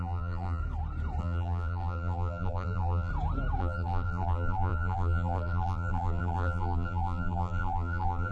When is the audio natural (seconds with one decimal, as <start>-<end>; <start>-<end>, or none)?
0.6-1.2; 3.1-3.6